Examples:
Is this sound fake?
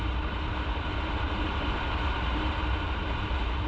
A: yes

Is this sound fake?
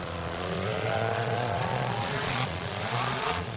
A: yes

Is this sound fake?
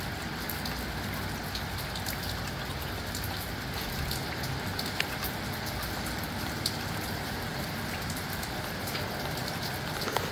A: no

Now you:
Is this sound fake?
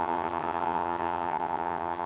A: yes